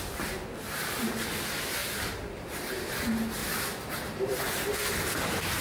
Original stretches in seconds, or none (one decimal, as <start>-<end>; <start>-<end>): 0.0-1.8; 2.9-3.4; 4.4-5.6